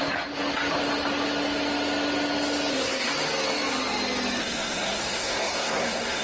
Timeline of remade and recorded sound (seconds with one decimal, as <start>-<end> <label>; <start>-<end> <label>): 0.0-2.7 recorded; 2.7-3.1 remade; 3.1-4.4 recorded; 4.4-6.2 remade

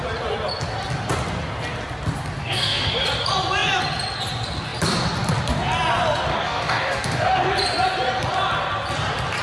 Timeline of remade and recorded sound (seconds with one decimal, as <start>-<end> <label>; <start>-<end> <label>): 0.0-2.4 recorded; 2.4-2.9 remade; 2.9-6.3 recorded; 6.3-7.5 remade; 7.5-9.4 recorded

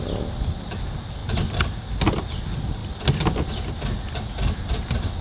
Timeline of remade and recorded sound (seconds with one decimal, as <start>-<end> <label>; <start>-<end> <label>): 0.0-5.2 recorded

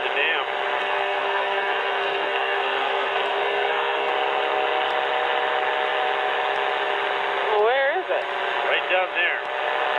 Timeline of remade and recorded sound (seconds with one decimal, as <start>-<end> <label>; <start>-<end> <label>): 0.0-0.8 recorded; 0.8-4.1 remade; 4.1-10.0 recorded

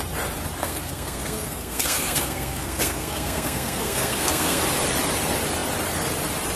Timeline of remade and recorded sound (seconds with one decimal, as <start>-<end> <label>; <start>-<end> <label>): 0.0-0.6 recorded; 0.6-4.6 remade; 4.6-6.6 recorded

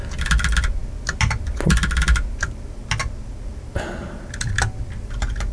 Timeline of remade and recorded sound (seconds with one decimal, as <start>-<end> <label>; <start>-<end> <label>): 0.0-5.5 recorded

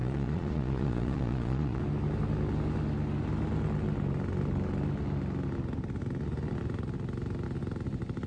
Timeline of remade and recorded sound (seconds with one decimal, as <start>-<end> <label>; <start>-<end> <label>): 0.0-1.8 remade; 1.8-8.3 recorded